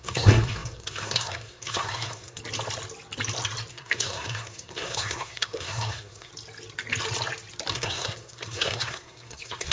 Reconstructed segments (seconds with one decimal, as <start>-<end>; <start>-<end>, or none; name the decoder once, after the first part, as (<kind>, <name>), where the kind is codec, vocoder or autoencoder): 0.0-2.4 (codec, SNAC); 3.7-6.3; 7.7-9.7